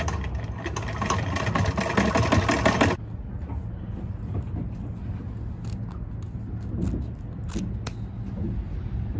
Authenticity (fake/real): real